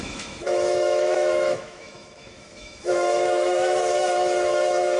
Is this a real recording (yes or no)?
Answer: no